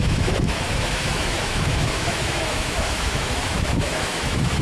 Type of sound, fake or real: fake